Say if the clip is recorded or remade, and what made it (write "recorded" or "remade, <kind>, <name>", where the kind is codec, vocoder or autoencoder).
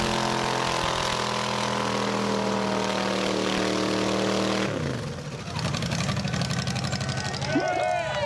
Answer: recorded